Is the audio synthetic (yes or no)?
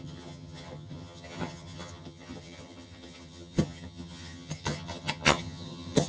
yes